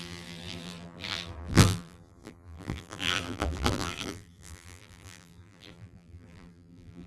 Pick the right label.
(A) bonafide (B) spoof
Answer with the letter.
B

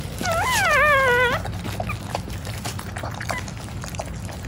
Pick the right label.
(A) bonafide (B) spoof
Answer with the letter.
A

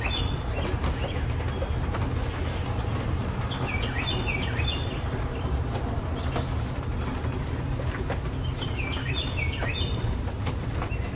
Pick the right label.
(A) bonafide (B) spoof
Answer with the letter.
A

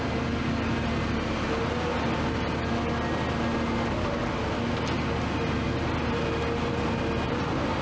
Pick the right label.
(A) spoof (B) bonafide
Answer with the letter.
B